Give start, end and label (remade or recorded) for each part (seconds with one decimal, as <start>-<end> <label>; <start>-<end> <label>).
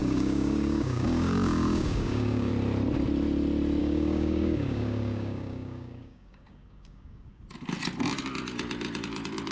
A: 0.0-2.5 remade; 2.5-3.8 recorded; 3.8-7.4 remade; 7.4-9.5 recorded